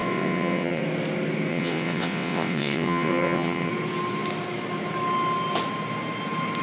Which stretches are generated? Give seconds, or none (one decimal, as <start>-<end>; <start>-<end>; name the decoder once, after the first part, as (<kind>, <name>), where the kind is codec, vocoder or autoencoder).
0.0-0.8 (vocoder, WaveNeXt); 1.5-3.7